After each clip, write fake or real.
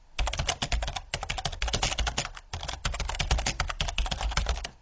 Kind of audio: real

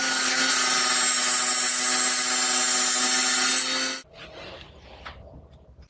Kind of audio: real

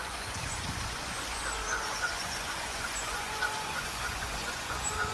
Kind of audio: fake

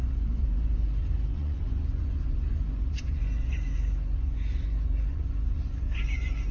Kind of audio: fake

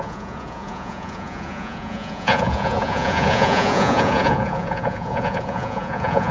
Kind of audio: fake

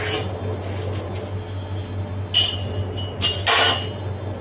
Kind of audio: real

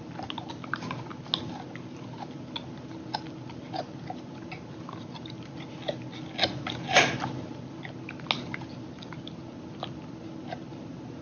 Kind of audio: real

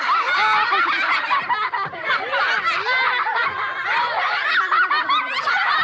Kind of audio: real